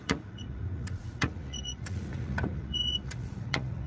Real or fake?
fake